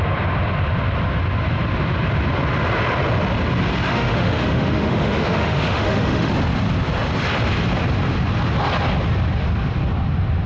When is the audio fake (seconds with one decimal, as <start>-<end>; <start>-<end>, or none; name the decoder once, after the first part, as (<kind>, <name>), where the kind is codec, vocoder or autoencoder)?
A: 3.9-6.3 (autoencoder, DAC-VAE)